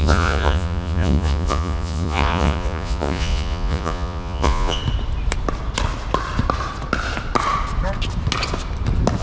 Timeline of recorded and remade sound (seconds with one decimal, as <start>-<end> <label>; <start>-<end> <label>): 0.0-4.8 remade; 4.8-9.2 recorded